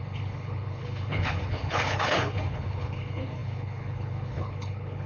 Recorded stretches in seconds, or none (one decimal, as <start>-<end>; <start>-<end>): none

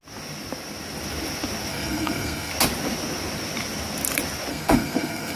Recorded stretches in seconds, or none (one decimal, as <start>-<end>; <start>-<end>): 0.0-1.7; 2.5-4.5

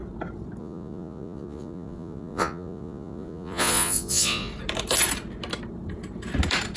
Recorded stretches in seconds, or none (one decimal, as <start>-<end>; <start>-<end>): 0.0-0.6; 4.5-6.8

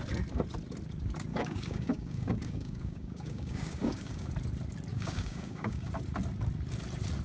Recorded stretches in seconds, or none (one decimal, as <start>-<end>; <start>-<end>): 0.0-1.3; 4.3-4.9; 5.9-7.2

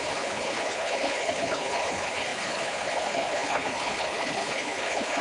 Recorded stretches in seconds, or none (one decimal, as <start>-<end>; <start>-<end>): none

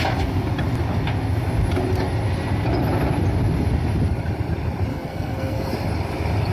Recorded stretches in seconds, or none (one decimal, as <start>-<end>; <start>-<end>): 0.0-4.9; 5.7-6.5

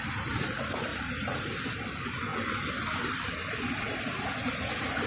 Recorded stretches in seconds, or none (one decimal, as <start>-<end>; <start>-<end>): 0.0-5.1